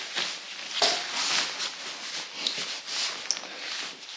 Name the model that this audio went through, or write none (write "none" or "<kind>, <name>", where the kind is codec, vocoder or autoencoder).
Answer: none